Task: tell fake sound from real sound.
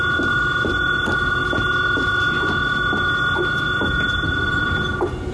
real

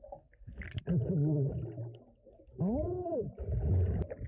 real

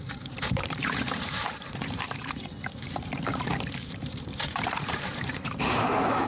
fake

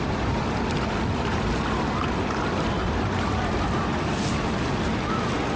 real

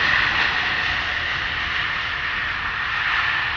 real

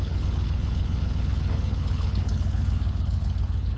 fake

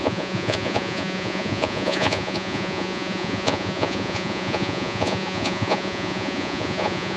fake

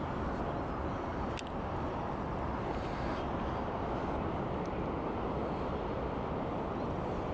real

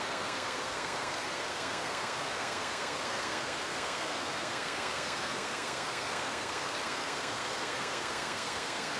fake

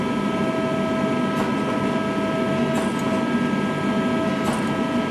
real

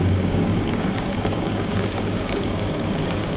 fake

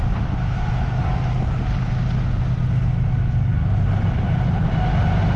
real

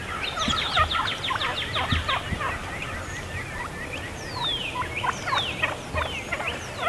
real